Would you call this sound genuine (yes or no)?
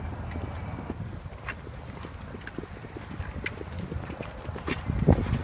yes